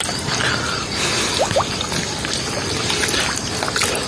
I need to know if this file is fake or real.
real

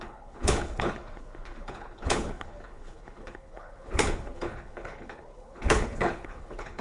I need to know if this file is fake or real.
fake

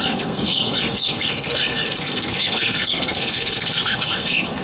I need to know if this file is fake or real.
fake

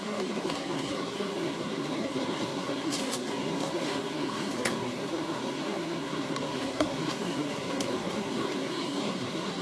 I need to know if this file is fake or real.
fake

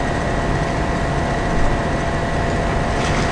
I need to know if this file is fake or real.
real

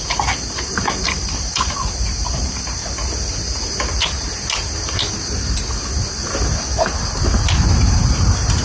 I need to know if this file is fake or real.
fake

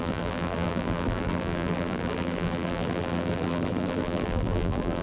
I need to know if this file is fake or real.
fake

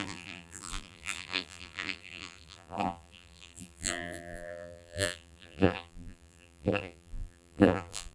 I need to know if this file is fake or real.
fake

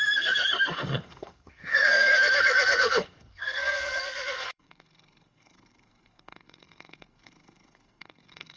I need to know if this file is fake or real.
fake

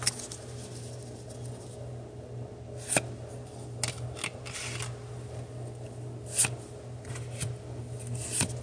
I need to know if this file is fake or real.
real